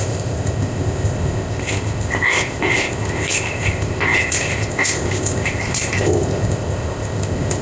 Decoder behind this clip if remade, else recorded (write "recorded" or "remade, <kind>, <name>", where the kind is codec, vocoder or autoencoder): remade, codec, ZipCodec